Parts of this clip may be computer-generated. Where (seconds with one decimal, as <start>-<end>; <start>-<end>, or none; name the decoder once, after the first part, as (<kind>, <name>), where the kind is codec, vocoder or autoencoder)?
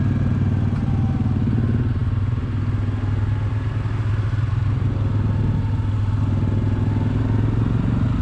none